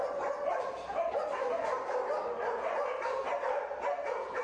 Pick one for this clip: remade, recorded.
recorded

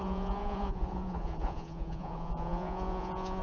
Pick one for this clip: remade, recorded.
remade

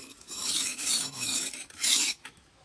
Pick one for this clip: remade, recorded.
remade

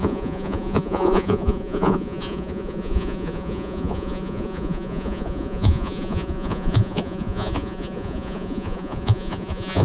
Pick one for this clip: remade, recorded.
remade